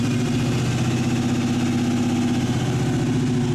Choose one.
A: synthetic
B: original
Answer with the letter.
B